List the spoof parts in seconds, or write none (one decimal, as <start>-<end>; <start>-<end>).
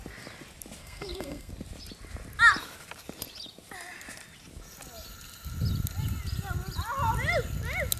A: 0.8-1.5